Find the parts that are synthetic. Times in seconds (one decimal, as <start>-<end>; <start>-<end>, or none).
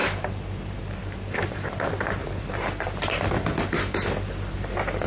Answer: 0.0-1.5; 2.2-5.1